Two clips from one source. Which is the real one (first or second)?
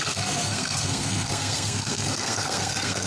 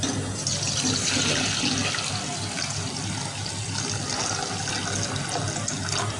second